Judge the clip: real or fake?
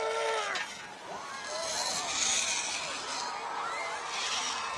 real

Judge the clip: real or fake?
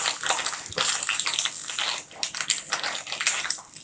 real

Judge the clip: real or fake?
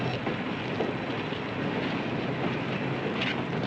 real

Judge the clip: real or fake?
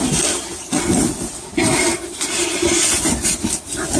real